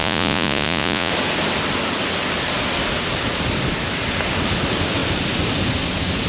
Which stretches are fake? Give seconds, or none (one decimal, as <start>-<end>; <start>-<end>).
0.0-1.1